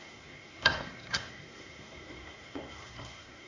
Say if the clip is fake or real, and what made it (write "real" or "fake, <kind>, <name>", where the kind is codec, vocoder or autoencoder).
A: fake, codec, SNAC